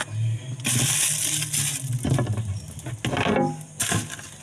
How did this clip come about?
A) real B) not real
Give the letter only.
A